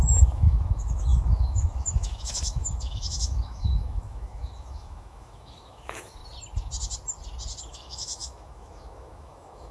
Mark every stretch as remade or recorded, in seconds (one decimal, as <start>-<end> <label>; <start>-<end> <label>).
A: 0.0-6.2 remade; 6.2-7.6 recorded; 7.6-9.7 remade